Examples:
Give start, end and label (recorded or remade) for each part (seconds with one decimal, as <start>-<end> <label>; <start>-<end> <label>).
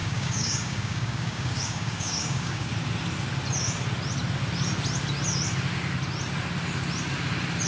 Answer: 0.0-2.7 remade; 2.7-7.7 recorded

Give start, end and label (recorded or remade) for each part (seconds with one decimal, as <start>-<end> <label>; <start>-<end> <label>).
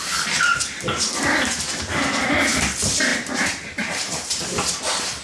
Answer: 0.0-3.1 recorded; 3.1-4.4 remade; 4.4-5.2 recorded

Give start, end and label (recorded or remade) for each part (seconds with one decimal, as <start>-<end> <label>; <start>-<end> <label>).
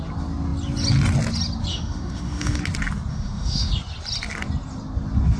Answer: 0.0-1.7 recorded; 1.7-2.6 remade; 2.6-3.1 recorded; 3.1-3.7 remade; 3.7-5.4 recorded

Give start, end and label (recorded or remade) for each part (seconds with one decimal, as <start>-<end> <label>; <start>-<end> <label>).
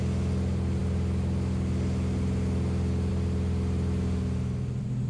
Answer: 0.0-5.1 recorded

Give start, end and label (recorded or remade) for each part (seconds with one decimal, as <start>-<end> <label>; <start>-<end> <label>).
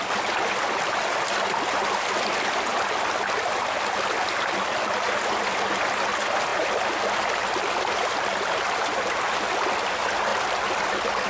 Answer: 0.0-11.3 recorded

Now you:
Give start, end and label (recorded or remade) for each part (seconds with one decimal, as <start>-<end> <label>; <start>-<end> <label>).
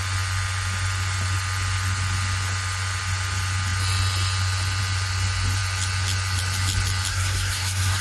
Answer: 0.0-7.1 recorded; 7.1-8.0 remade